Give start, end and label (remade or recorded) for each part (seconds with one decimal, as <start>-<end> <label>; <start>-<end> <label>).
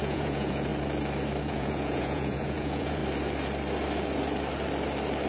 0.0-0.7 remade; 0.7-1.4 recorded; 1.4-3.0 remade; 3.0-5.3 recorded